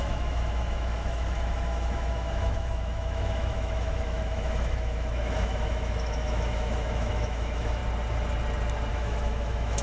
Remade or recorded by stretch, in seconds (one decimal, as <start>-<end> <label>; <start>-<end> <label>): 0.0-7.8 remade; 7.8-8.9 recorded; 8.9-9.8 remade